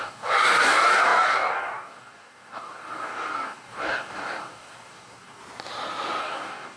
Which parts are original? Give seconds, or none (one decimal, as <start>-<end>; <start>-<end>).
5.4-6.2